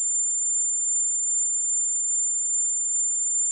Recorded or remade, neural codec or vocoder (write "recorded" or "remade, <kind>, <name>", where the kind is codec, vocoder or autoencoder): remade, codec, DAC